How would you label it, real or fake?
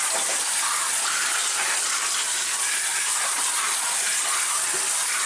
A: real